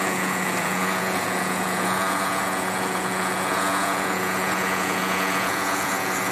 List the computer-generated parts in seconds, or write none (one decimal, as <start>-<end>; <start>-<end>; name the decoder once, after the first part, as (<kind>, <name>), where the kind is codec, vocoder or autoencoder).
0.0-6.3 (vocoder, Vocos)

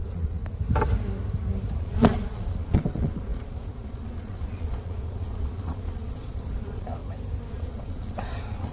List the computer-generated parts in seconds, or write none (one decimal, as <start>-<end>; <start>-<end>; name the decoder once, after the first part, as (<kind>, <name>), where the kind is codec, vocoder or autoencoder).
0.0-0.4 (vocoder, Vocos); 1.8-7.0; 7.5-8.7

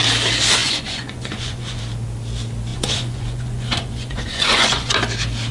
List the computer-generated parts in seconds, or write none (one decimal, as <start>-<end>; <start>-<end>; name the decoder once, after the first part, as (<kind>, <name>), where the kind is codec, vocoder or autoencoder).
0.6-1.8 (vocoder, Vocos); 2.7-4.9

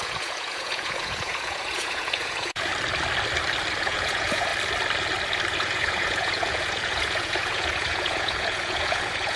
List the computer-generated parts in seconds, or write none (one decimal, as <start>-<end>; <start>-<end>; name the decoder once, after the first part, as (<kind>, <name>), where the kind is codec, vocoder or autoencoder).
0.0-2.7 (vocoder, Vocos); 3.8-4.5; 5.6-9.4

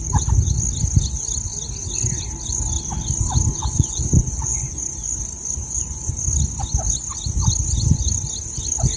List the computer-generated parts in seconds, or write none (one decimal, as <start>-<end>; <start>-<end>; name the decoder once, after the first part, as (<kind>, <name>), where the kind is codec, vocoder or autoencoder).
3.6-4.8 (vocoder, Vocos); 5.6-6.1

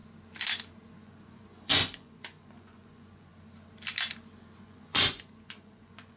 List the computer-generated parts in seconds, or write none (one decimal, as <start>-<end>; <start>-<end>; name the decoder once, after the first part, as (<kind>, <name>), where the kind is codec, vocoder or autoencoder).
0.9-3.3 (vocoder, Vocos); 4.6-6.2

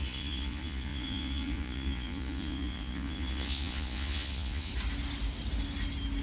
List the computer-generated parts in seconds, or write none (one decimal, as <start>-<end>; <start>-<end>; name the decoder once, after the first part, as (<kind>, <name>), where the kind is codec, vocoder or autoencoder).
0.0-4.7 (vocoder, Vocos)